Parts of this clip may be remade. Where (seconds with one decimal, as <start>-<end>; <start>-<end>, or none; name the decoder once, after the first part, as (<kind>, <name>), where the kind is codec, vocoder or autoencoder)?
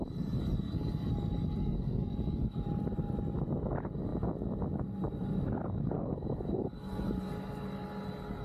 1.6-2.1 (codec, SNAC)